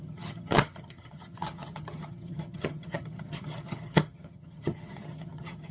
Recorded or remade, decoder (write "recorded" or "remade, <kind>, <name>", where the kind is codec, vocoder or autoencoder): remade, vocoder, HiFi-GAN